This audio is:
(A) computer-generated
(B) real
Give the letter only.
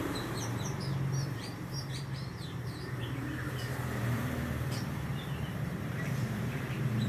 A